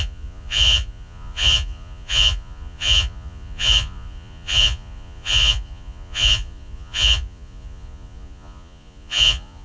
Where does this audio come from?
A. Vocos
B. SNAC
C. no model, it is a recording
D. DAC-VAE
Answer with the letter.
A